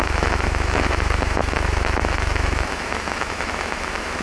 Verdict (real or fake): fake